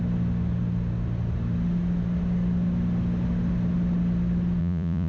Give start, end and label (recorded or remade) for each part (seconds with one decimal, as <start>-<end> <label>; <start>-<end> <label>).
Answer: 0.0-4.6 recorded; 4.6-5.1 remade